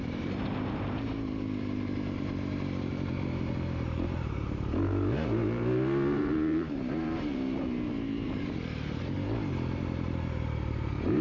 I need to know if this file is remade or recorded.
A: remade